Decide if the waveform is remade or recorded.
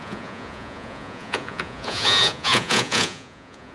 remade